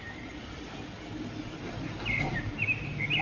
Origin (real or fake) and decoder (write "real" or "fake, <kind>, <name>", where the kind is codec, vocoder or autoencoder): real